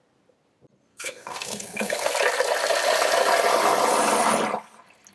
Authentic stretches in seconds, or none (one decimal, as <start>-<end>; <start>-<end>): 0.0-0.9; 2.1-5.1